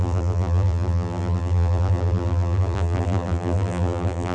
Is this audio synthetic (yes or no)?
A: yes